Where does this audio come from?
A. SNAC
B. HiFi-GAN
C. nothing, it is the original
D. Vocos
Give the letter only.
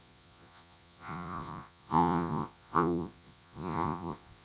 D